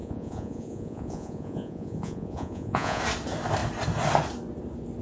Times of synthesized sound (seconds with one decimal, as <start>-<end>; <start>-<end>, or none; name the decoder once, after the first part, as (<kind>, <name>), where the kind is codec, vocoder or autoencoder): 0.0-3.0 (vocoder, Vocos)

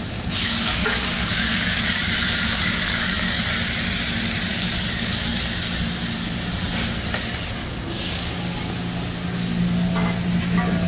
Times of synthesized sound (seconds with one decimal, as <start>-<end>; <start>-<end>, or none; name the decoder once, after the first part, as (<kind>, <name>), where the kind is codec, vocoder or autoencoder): 0.4-3.4 (codec, DAC); 4.5-5.3; 7.6-8.5

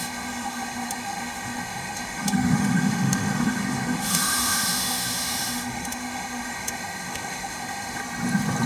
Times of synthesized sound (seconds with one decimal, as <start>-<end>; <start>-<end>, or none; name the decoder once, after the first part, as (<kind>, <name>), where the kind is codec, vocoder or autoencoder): 0.0-8.0 (autoencoder, DAC-VAE)

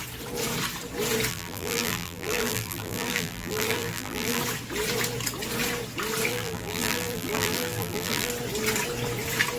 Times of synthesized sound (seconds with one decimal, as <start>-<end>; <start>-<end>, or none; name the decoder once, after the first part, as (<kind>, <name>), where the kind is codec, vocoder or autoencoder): 1.3-4.4 (vocoder, BigVGAN v2); 6.3-8.3

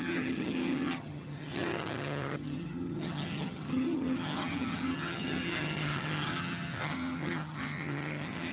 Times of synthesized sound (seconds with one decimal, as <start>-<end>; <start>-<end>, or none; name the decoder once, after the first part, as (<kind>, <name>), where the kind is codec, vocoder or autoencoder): 0.0-8.5 (vocoder, HiFi-GAN)

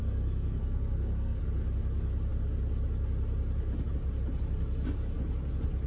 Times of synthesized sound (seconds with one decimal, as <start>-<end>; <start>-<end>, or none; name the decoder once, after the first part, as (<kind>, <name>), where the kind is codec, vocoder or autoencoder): 0.0-1.4 (codec, SNAC)

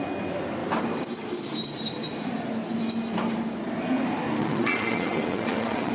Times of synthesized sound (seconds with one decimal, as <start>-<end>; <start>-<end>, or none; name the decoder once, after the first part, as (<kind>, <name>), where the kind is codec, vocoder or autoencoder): 4.4-5.9 (vocoder, Vocos)